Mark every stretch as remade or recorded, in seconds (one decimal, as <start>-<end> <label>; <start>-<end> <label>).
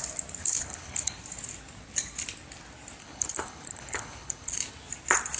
0.0-0.4 recorded; 0.4-1.2 remade; 1.2-3.0 recorded; 3.0-4.5 remade; 4.5-5.4 recorded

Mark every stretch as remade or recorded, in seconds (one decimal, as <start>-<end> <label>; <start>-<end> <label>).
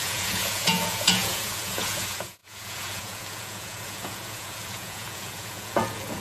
0.0-6.2 remade